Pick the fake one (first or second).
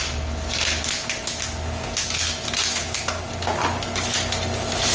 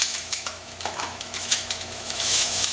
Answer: second